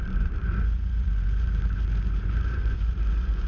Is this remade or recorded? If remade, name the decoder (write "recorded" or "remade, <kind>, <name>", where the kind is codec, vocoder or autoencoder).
remade, vocoder, Vocos